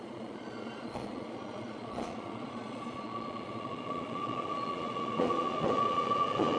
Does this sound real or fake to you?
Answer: fake